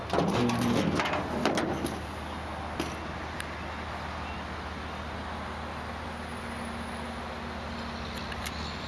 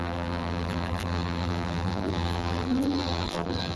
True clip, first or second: first